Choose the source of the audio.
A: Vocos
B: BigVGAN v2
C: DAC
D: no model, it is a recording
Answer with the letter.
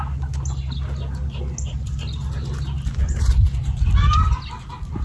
D